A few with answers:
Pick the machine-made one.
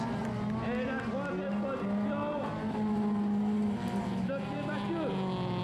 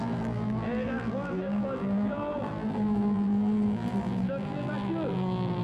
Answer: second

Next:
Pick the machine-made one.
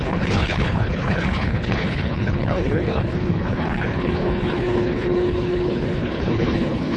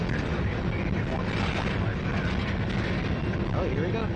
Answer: first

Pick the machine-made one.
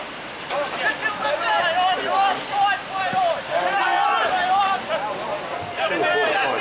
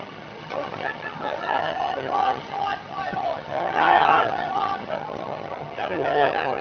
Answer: second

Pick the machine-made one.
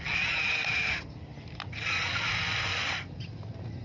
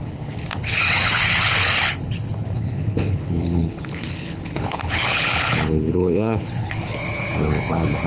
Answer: second